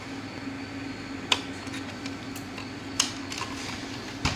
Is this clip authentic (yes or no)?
yes